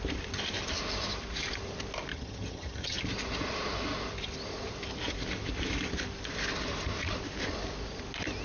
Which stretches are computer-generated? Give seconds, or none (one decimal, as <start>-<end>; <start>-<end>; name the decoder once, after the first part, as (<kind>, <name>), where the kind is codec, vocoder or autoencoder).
2.1-3.0 (vocoder, HiFi-GAN)